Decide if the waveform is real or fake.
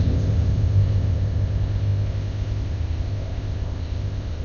fake